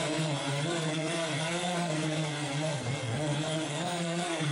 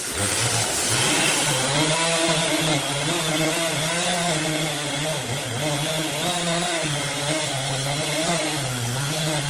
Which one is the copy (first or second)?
first